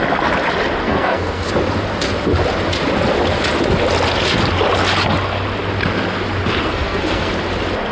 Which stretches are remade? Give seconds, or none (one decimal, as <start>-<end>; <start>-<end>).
0.8-1.5; 6.6-7.3